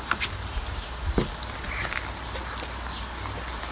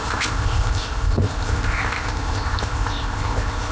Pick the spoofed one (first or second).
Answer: second